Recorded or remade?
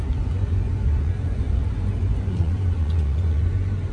remade